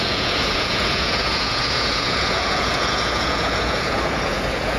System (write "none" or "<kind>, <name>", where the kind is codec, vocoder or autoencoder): vocoder, Vocos